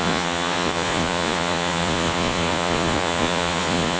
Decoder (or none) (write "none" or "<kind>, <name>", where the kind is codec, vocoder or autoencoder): vocoder, Vocos